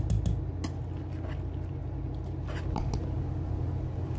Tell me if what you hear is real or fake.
real